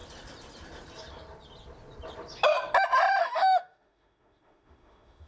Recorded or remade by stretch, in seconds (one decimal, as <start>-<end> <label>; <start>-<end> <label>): 0.0-3.2 recorded; 3.2-5.3 remade